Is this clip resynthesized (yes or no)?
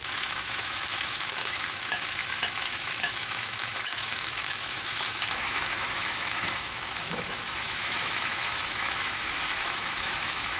yes